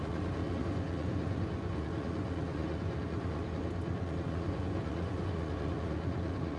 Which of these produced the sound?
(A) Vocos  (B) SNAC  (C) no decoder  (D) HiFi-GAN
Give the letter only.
A